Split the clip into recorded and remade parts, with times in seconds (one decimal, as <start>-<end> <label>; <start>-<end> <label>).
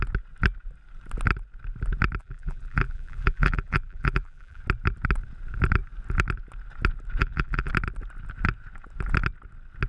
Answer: 0.0-2.2 recorded; 2.2-4.6 remade; 4.6-7.2 recorded; 7.2-7.7 remade; 7.7-9.9 recorded